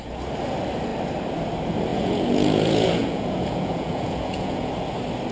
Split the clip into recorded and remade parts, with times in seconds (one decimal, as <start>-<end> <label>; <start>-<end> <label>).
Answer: 0.0-1.9 recorded; 1.9-4.7 remade; 4.7-5.3 recorded

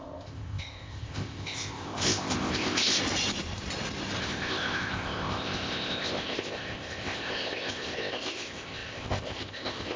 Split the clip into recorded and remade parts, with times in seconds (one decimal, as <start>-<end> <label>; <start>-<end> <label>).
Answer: 0.0-3.0 remade; 3.0-4.2 recorded; 4.2-10.0 remade

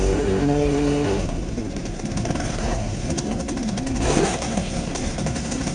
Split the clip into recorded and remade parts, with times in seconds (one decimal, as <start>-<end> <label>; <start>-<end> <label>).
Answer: 0.0-5.7 remade

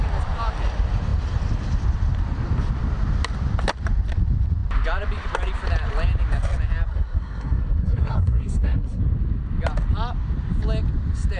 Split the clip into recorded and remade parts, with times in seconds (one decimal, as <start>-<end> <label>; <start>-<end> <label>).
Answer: 0.0-6.9 recorded; 6.9-9.0 remade; 9.0-11.4 recorded

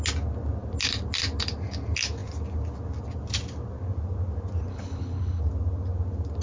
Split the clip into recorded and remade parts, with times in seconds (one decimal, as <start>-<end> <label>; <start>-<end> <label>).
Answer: 0.0-4.7 recorded; 4.7-5.4 remade; 5.4-6.4 recorded

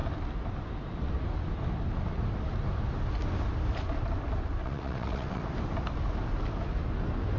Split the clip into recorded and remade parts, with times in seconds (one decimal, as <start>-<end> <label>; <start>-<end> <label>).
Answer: 0.0-4.6 recorded; 4.6-5.4 remade; 5.4-7.4 recorded

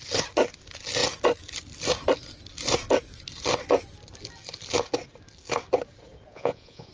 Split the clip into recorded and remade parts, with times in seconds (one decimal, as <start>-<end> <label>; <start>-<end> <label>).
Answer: 0.0-6.3 recorded; 6.3-6.9 remade